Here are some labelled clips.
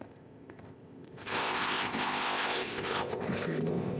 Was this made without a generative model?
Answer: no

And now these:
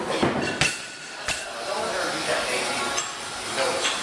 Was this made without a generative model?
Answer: yes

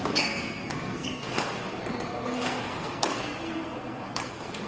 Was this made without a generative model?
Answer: no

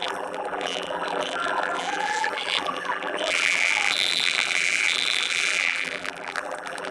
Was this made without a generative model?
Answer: no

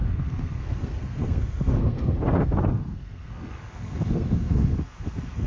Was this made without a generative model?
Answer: no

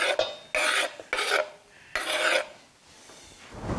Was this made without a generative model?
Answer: yes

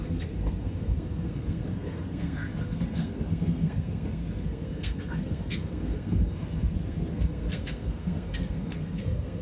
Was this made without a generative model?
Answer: no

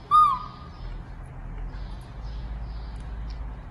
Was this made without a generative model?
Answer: yes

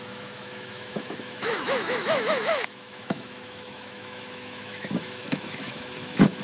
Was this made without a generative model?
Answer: no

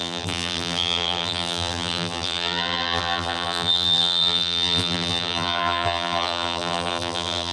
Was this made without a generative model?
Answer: no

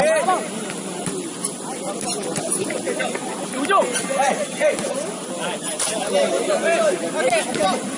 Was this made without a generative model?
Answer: yes